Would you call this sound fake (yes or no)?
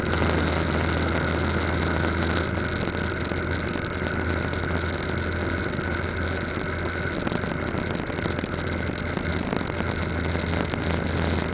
no